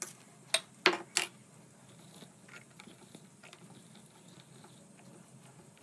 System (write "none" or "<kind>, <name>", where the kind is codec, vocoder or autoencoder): none